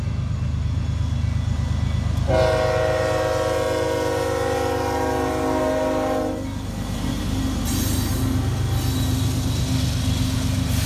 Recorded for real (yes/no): yes